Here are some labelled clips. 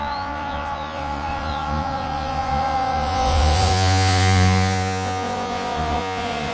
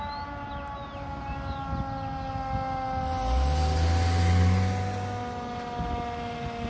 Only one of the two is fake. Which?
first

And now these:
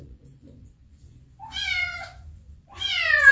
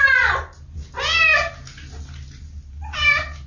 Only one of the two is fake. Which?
first